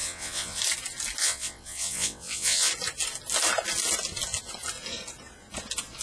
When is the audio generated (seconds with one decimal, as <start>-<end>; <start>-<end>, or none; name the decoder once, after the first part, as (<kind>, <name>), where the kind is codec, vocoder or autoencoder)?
0.0-0.6 (vocoder, WaveNeXt); 1.2-2.7